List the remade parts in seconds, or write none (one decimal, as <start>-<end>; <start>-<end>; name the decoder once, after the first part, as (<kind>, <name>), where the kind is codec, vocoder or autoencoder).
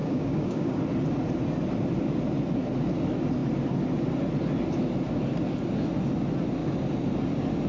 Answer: 0.0-0.8 (codec, DAC)